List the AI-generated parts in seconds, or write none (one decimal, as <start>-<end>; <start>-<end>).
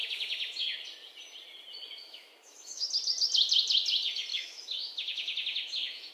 2.0-2.9; 4.3-6.1